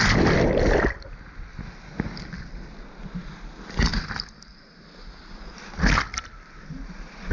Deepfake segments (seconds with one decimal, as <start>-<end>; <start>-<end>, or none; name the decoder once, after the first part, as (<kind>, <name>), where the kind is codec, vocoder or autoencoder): none